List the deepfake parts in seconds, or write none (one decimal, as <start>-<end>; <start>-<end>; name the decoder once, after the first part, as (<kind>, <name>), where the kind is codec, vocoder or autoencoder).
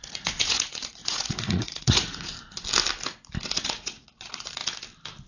0.0-2.3 (vocoder, Vocos); 3.5-4.6